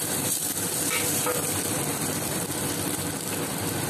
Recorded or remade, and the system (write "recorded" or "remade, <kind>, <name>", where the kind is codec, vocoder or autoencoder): remade, vocoder, BigVGAN v2